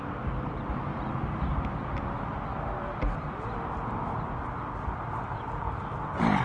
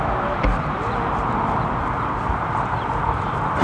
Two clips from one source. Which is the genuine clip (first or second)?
first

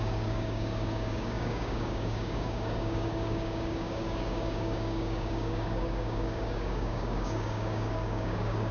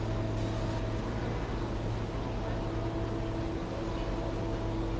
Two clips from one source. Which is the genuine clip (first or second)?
second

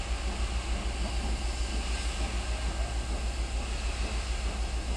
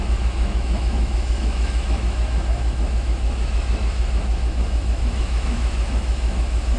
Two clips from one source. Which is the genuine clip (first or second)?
first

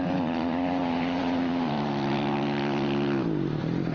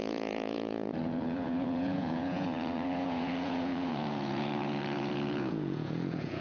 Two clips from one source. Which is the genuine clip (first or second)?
first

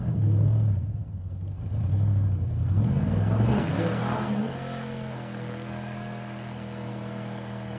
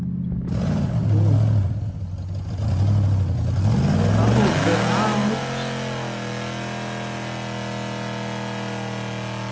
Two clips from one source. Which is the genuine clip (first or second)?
second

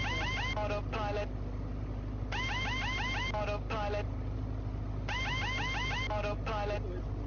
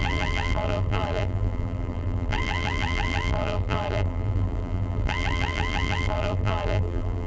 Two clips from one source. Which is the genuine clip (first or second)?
first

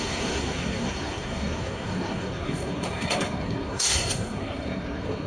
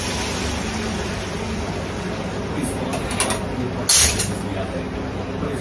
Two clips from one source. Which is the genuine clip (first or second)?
second